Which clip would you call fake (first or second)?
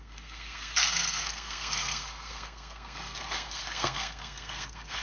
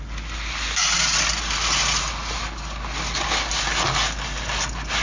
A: first